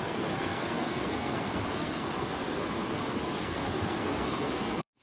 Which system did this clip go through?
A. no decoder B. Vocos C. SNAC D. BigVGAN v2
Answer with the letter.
C